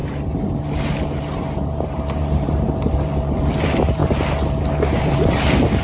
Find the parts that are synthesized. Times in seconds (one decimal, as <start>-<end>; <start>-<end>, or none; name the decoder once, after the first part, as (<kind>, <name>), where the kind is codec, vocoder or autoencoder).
0.0-4.0 (vocoder, BigVGAN v2); 5.0-5.8